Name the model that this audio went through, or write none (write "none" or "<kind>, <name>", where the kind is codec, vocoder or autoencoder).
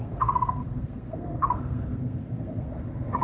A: codec, SNAC